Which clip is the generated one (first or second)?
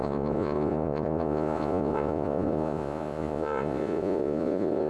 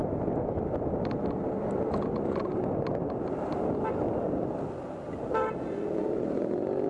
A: first